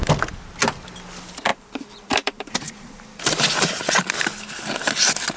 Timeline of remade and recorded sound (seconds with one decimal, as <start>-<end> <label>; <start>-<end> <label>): 0.0-1.5 recorded; 1.5-3.9 remade; 3.9-5.4 recorded